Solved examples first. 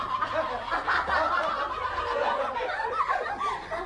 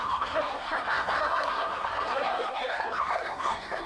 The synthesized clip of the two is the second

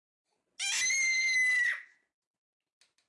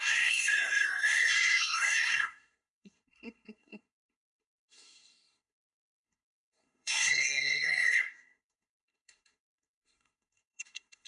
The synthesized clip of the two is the second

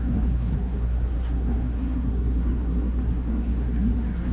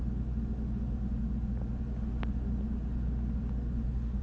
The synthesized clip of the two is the first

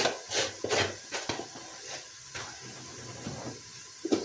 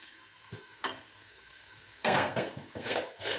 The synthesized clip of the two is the second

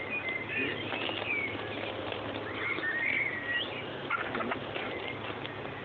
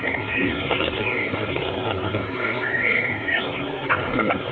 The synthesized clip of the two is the second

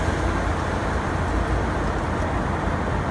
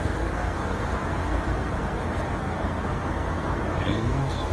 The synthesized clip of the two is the second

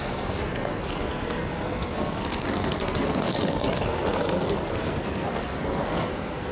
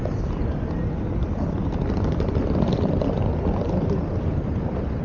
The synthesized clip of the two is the first